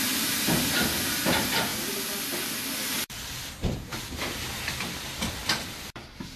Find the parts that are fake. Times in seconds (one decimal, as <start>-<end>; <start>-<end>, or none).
0.0-6.4